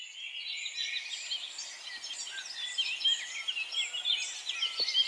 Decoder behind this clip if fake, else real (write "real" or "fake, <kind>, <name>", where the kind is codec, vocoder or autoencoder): real